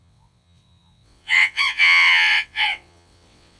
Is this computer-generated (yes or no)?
yes